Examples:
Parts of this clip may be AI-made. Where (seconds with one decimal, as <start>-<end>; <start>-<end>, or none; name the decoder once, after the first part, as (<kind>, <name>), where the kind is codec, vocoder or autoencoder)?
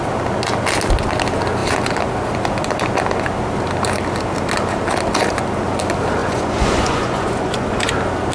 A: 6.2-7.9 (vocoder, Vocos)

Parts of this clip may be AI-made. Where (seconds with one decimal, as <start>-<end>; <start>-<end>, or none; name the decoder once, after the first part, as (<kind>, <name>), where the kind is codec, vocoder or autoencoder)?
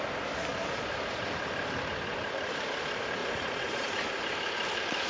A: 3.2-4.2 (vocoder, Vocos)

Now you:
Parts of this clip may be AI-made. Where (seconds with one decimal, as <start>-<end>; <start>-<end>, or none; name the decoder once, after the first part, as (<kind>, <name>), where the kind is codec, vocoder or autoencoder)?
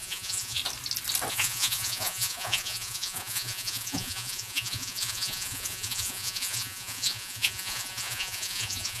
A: 0.0-0.6 (vocoder, Vocos); 1.3-9.0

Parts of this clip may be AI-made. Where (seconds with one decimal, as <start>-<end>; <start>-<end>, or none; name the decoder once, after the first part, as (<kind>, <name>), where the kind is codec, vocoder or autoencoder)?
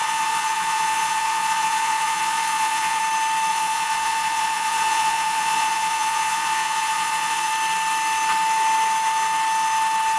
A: 0.0-3.0 (vocoder, Vocos); 3.5-7.5